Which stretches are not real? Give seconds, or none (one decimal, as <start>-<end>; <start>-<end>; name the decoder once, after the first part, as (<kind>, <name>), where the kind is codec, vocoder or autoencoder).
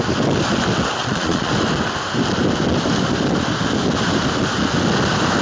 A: 1.0-1.5 (vocoder, Vocos)